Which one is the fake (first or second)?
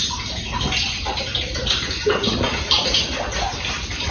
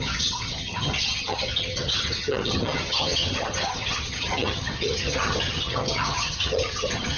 second